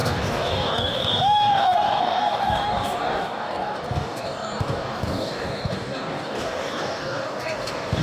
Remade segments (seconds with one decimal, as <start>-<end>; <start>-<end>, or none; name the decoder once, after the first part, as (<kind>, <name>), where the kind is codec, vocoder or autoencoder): 0.0-8.0 (codec, DAC)

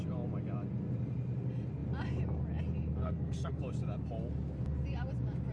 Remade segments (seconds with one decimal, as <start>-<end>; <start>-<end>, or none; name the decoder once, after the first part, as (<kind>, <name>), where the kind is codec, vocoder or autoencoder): 3.0-3.6 (codec, SNAC)

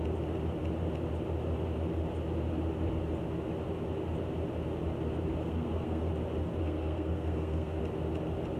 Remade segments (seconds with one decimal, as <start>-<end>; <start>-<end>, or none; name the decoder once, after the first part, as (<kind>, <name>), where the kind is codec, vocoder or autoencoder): 5.4-6.1 (codec, SNAC); 6.6-7.8

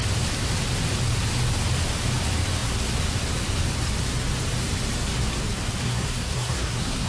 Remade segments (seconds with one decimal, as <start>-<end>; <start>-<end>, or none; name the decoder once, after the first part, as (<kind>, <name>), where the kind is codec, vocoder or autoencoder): 5.8-7.1 (codec, SNAC)

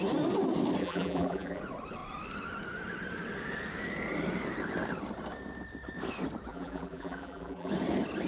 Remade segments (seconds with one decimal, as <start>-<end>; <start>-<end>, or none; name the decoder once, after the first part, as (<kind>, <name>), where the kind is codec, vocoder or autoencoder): 0.8-1.6 (vocoder, BigVGAN v2); 6.5-7.7

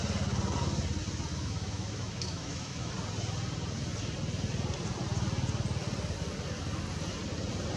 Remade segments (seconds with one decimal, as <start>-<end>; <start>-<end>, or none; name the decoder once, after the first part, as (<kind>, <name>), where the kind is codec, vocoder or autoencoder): 1.3-2.9 (autoencoder, DAC-VAE)

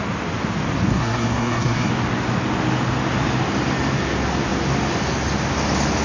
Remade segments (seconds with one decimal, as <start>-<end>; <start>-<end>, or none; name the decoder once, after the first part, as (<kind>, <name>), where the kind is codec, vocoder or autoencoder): 0.9-1.9 (codec, SNAC)